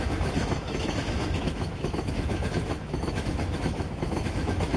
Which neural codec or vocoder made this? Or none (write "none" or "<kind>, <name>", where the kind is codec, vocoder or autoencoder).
autoencoder, DAC-VAE